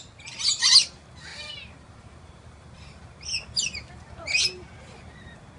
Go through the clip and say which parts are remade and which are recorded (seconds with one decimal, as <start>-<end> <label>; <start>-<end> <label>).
0.0-1.3 recorded; 1.3-2.8 remade; 2.8-5.6 recorded